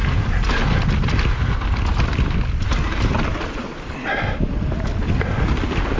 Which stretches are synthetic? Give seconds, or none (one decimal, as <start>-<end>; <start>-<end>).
none